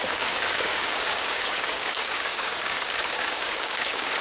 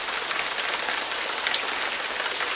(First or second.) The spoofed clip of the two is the first